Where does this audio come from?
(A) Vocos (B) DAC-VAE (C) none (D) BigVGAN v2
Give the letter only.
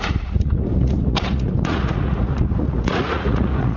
A